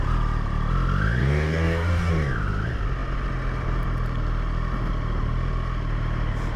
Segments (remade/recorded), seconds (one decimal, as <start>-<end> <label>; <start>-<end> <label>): 0.0-1.2 recorded; 1.2-2.1 remade; 2.1-6.6 recorded